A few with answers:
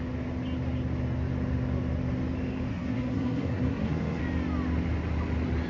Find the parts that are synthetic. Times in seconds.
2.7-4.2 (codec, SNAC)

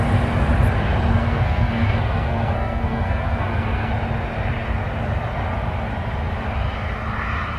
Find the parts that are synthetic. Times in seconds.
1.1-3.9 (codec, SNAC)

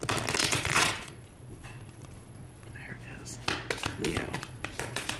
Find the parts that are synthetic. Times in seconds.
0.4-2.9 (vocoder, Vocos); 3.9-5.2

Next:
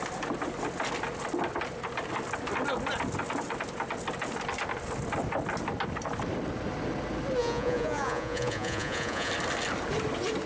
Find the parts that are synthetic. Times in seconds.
7.4-9.3 (vocoder, Vocos)

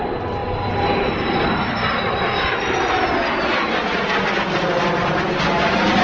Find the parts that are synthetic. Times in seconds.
none

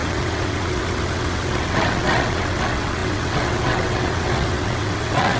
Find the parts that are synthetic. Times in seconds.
0.0-5.4 (vocoder, WaveNeXt)